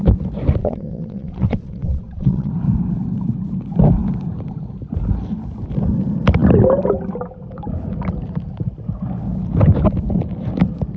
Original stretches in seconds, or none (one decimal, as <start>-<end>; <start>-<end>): 0.0-0.6; 2.5-11.0